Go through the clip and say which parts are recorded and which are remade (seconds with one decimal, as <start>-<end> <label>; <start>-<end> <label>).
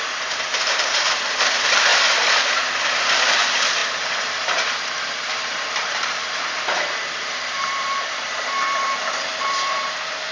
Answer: 0.0-1.9 remade; 1.9-2.8 recorded; 2.8-10.3 remade